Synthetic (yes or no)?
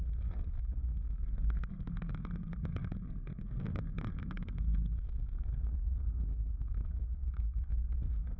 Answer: yes